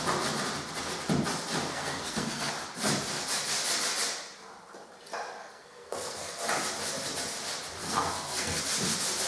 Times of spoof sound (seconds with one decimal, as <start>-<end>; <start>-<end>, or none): 1.7-2.5; 5.4-6.4; 7.8-8.6